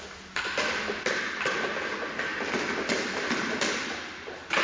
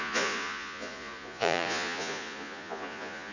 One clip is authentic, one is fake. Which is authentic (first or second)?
first